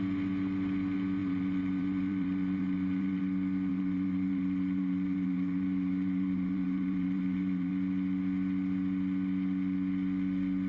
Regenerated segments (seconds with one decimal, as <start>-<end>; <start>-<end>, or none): 1.2-3.2; 3.7-7.7